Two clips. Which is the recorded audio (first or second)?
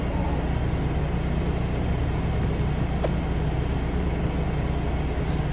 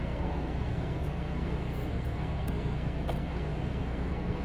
first